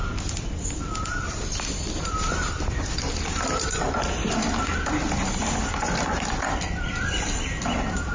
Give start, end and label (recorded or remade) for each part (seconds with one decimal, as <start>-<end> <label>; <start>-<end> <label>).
0.0-4.7 remade; 4.7-6.4 recorded; 6.4-8.1 remade